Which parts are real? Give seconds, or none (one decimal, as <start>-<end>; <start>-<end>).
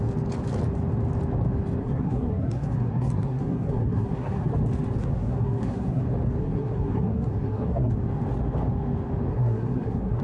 0.0-1.8; 4.5-5.0; 6.0-6.4; 7.9-9.3